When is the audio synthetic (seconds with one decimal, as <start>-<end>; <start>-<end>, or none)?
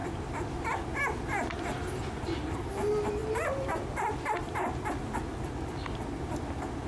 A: none